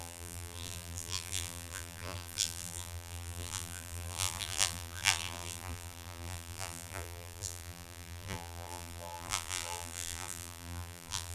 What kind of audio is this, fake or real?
fake